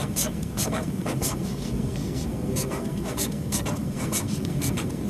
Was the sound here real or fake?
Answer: fake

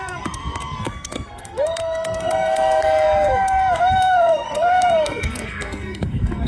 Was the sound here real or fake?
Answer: fake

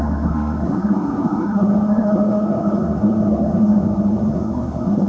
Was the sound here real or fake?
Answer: fake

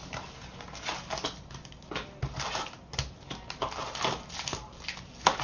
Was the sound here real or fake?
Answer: real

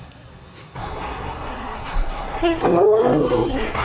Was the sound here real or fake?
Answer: fake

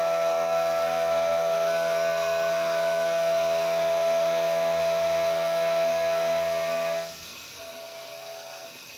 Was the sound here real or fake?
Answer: fake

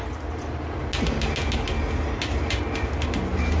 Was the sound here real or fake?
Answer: real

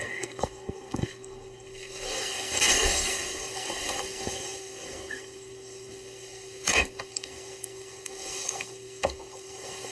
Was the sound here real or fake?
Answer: fake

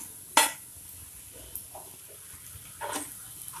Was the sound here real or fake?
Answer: real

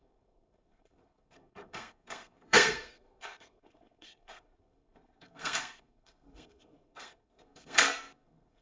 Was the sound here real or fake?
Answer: fake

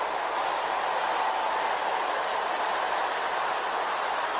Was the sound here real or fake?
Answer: real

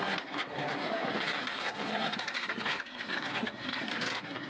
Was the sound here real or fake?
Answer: fake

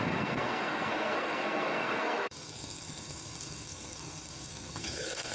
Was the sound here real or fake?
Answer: fake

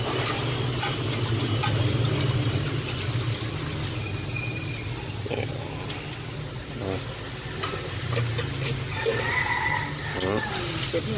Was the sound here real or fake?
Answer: real